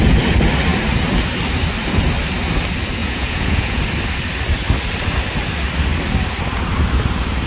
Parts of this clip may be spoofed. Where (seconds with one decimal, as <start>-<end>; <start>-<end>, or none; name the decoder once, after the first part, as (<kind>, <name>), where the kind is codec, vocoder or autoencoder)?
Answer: 3.0-3.8 (vocoder, Vocos)